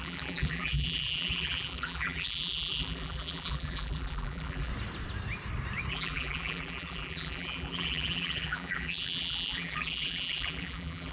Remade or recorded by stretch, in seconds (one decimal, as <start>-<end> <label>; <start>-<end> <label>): 0.0-4.7 remade; 4.7-5.9 recorded; 5.9-11.1 remade

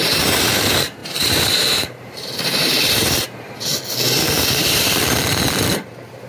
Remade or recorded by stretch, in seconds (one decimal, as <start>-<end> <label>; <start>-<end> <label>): 0.0-3.7 remade; 3.7-4.2 recorded; 4.2-6.3 remade

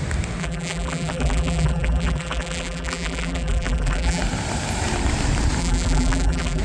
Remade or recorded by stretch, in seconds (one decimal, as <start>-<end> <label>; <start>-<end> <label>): 0.0-0.4 recorded; 0.4-4.2 remade; 4.2-5.6 recorded; 5.6-6.6 remade

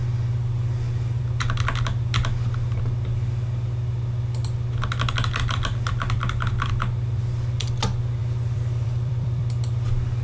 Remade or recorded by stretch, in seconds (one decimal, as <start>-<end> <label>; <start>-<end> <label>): 0.0-8.2 recorded; 8.2-9.4 remade; 9.4-10.2 recorded

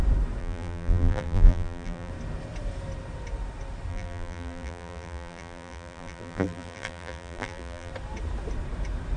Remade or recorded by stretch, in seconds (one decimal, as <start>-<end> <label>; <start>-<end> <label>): 0.0-0.4 recorded; 0.4-2.1 remade; 2.1-3.9 recorded; 3.9-7.9 remade; 7.9-9.2 recorded

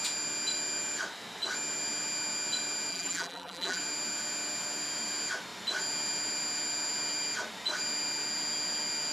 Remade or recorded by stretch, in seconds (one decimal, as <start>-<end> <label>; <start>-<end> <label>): 0.0-2.9 recorded; 2.9-3.8 remade; 3.8-9.1 recorded

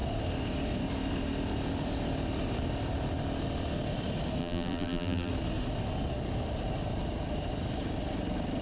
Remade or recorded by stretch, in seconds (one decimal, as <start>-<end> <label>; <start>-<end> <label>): 0.0-4.4 recorded; 4.4-5.3 remade; 5.3-8.6 recorded